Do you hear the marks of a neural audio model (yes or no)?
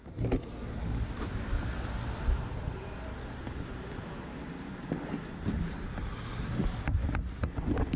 no